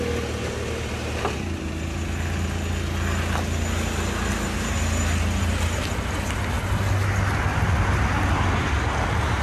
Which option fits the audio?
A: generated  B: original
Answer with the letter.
B